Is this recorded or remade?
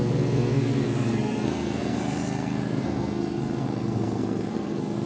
remade